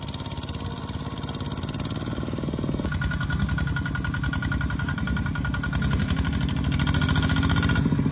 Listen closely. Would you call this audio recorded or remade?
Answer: recorded